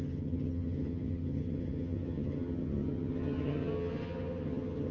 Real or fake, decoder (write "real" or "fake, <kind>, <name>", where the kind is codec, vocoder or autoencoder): fake, vocoder, HiFi-GAN